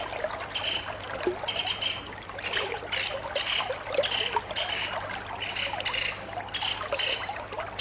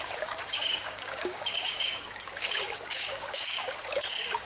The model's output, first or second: second